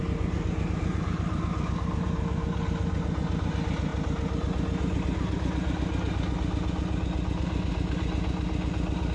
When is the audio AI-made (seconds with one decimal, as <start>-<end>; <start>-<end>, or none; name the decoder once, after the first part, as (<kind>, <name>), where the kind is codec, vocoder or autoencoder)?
none